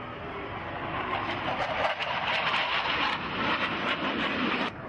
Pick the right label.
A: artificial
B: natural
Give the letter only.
B